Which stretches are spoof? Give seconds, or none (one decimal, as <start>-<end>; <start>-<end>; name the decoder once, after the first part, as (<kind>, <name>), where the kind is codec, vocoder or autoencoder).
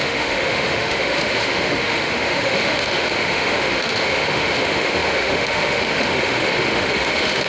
0.0-7.5 (autoencoder, DAC-VAE)